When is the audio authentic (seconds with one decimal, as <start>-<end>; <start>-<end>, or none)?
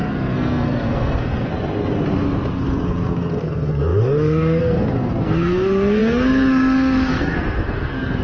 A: 1.5-2.5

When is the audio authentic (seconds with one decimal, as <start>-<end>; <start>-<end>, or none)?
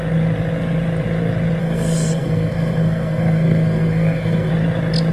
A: 0.0-1.6; 4.5-5.1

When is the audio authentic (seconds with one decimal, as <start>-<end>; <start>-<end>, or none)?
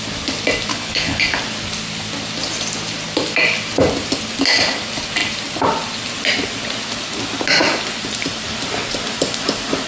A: 0.0-0.7; 1.2-9.9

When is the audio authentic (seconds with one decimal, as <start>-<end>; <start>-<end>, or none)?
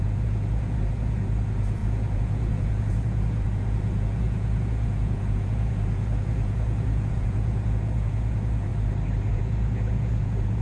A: 8.7-9.3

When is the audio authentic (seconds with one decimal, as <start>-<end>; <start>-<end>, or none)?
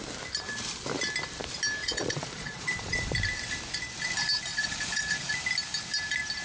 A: 0.0-1.8; 3.1-4.5; 5.3-6.4